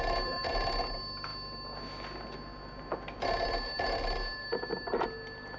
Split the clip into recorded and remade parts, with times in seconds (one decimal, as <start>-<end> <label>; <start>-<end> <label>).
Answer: 0.0-5.6 recorded